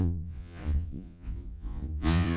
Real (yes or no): no